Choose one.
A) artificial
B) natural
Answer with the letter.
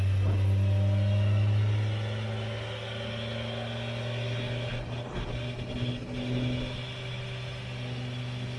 B